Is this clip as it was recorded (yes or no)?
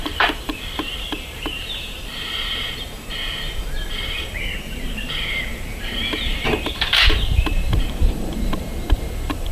no